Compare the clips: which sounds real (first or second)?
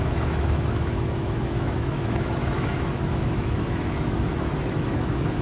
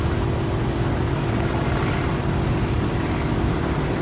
second